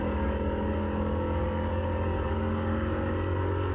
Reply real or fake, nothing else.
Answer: fake